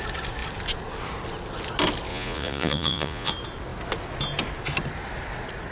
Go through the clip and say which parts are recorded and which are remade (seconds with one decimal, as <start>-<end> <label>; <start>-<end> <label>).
0.0-2.1 recorded; 2.1-3.3 remade; 3.3-5.7 recorded